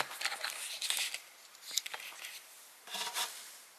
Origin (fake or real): real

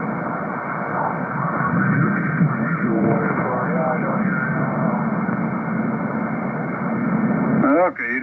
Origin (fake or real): real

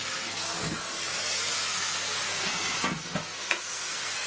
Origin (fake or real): fake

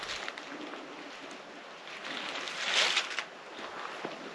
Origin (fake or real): real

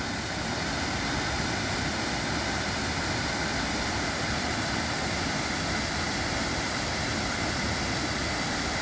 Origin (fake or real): real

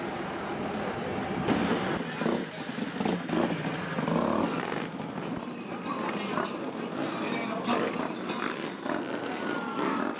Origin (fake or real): real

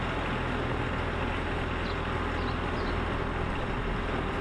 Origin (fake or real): real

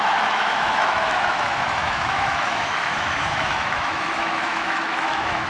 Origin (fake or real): fake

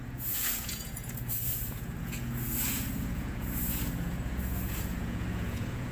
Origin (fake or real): fake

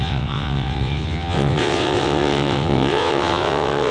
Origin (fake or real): fake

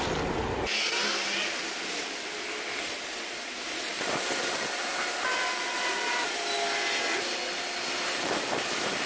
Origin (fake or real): real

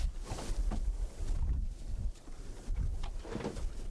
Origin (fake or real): real